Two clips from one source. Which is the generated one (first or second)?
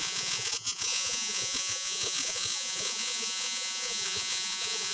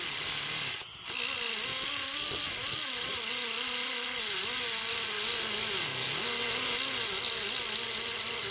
first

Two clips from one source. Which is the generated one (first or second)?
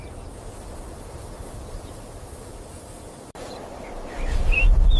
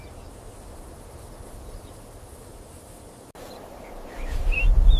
first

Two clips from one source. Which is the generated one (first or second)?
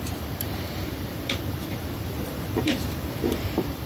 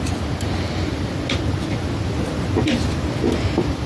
first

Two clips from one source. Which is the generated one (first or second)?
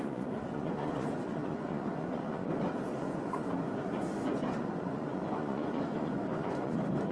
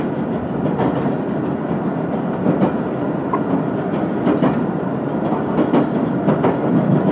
first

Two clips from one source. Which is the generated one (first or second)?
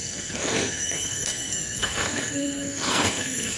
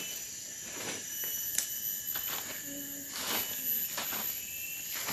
first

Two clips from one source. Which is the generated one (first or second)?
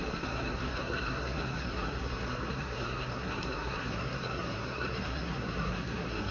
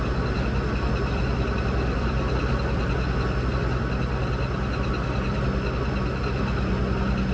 first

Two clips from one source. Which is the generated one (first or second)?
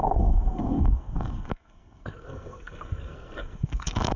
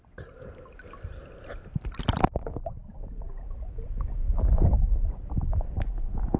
first